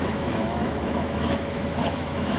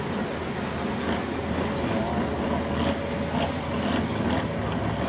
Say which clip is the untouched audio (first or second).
second